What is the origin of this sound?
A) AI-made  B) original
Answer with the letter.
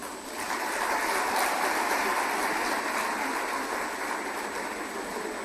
B